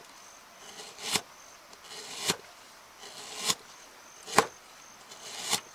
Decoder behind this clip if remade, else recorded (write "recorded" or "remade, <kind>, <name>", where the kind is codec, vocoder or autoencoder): recorded